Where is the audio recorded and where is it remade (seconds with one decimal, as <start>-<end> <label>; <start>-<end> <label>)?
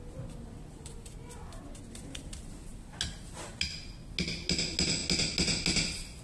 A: 0.0-6.2 recorded